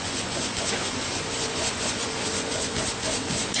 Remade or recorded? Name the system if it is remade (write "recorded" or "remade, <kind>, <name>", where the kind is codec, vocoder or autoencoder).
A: remade, vocoder, Vocos